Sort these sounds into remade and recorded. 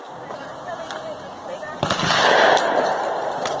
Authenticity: recorded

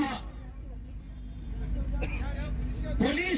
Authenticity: remade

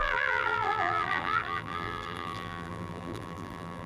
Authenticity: remade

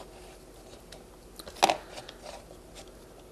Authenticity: recorded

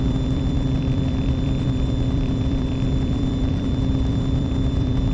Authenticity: remade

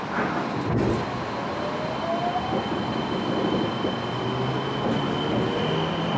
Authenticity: recorded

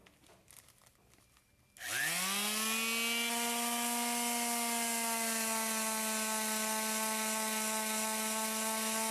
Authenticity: recorded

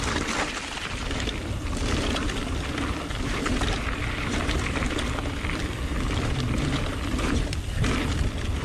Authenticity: remade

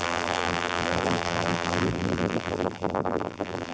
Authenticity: remade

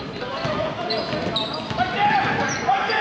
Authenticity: recorded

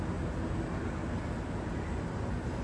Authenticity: recorded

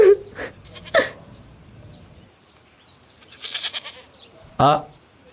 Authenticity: remade